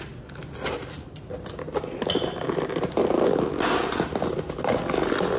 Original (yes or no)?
yes